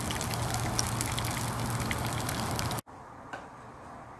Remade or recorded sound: recorded